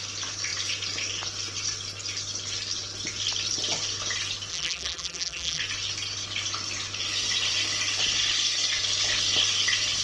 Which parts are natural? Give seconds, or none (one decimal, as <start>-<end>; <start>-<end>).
0.0-4.5; 5.6-10.0